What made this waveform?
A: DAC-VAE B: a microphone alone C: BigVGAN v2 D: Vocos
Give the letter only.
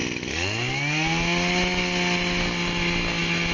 B